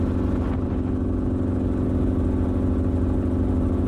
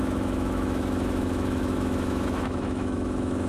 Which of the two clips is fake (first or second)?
second